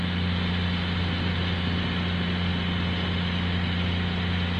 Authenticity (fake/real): real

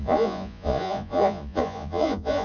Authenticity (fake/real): fake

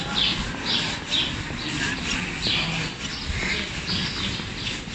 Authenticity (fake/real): real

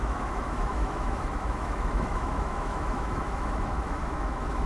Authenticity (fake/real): fake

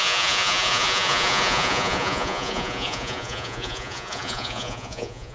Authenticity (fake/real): fake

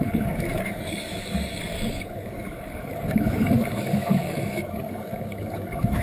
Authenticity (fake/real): fake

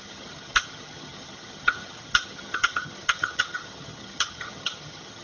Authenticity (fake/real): fake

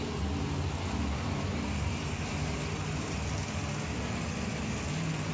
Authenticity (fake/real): real